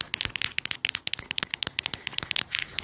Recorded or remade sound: recorded